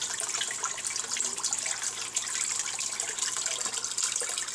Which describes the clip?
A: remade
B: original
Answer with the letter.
B